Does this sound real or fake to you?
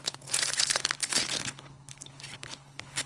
fake